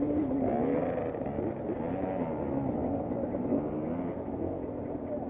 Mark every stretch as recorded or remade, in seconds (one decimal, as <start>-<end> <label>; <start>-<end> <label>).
0.0-5.3 recorded